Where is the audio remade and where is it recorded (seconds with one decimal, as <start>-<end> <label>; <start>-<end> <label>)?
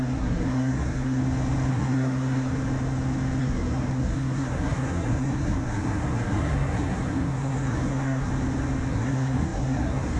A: 0.0-1.2 remade; 1.2-1.7 recorded; 1.7-2.5 remade; 2.5-3.4 recorded; 3.4-8.3 remade; 8.3-8.9 recorded; 8.9-10.2 remade